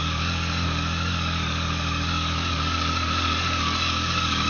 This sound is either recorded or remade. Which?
remade